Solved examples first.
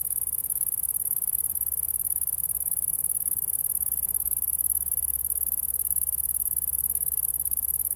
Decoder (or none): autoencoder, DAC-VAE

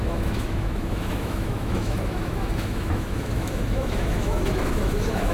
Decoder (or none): autoencoder, DAC-VAE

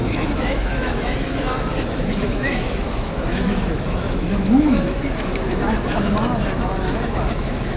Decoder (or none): autoencoder, DAC-VAE